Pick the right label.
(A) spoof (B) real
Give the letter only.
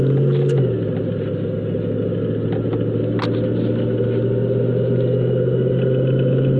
B